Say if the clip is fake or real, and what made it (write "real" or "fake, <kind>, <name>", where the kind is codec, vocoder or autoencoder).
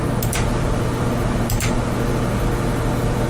real